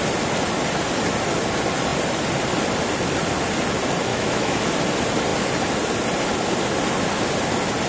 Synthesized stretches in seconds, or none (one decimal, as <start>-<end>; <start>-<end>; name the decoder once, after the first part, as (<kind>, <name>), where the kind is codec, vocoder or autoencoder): 4.1-4.6 (autoencoder, DAC-VAE)